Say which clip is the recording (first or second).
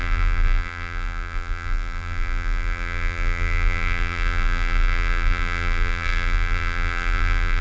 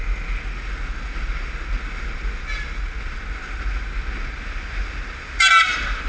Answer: second